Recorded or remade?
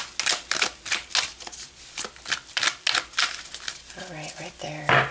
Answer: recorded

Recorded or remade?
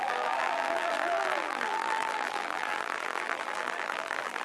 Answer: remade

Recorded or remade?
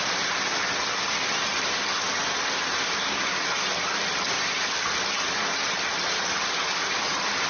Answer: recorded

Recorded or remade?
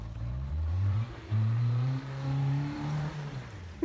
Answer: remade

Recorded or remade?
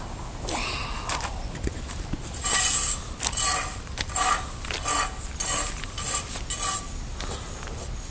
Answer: recorded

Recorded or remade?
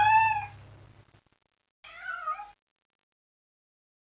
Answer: recorded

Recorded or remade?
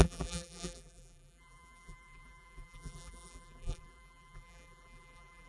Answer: remade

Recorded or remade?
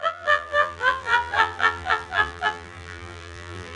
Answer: remade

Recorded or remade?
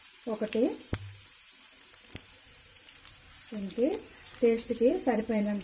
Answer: remade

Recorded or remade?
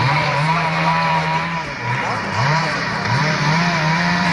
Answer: remade